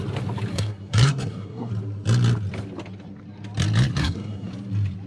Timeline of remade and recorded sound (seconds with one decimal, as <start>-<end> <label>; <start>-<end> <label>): 0.0-0.5 recorded; 0.5-1.7 remade; 1.7-4.0 recorded; 4.0-4.5 remade; 4.5-5.1 recorded